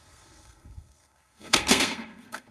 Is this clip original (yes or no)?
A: no